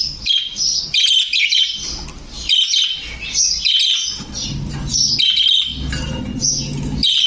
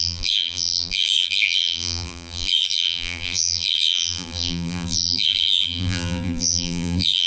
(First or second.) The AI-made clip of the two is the second